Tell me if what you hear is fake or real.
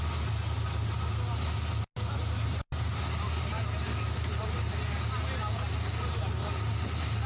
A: real